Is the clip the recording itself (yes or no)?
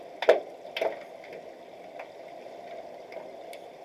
yes